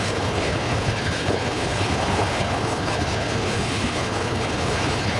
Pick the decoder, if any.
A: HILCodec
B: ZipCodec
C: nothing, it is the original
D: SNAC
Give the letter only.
A